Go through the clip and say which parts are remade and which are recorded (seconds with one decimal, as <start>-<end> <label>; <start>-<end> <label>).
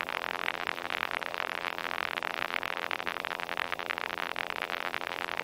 0.0-5.4 remade